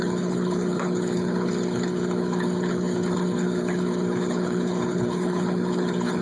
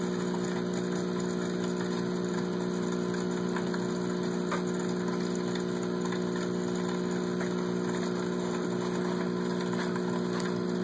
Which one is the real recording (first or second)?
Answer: second